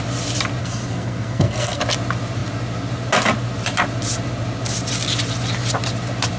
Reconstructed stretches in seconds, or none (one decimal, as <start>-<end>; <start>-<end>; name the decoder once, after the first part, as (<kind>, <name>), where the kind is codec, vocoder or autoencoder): 0.6-1.8 (codec, SNAC)